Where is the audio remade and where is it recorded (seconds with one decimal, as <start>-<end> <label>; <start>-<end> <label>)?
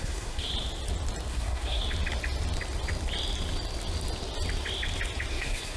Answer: 0.0-0.5 remade; 0.5-1.3 recorded; 1.3-1.8 remade; 1.8-5.3 recorded; 5.3-5.8 remade